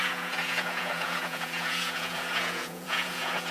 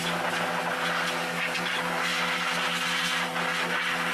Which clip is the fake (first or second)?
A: first